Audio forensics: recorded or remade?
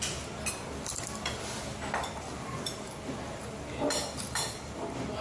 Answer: recorded